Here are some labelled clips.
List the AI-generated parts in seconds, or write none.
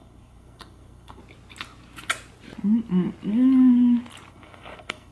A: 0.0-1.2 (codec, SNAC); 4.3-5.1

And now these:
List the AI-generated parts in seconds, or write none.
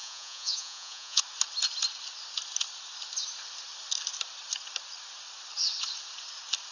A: 0.0-1.2 (vocoder, Vocos)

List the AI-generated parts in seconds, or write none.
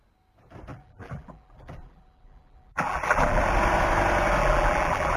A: 0.7-3.4 (vocoder, BigVGAN v2); 4.4-5.2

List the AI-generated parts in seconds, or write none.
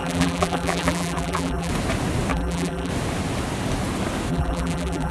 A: 0.0-1.7 (vocoder, BigVGAN v2); 2.3-2.9; 4.3-5.1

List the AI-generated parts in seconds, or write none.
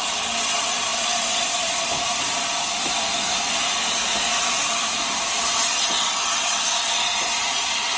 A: none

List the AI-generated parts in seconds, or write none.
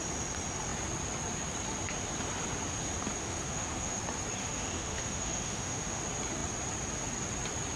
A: 3.2-4.0 (autoencoder, DAC-VAE); 4.4-6.0